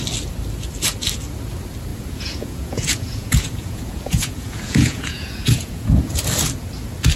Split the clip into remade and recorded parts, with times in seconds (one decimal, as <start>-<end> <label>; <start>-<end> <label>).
0.0-1.9 recorded; 1.9-6.2 remade; 6.2-7.2 recorded